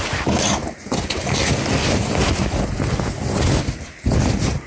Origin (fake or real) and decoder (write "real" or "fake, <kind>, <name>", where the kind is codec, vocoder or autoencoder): real